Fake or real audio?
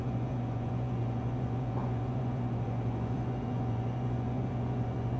fake